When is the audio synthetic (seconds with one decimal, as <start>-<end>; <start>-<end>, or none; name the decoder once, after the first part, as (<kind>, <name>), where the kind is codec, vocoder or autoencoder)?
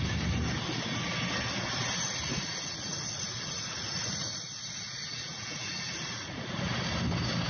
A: 2.2-6.7 (vocoder, Vocos)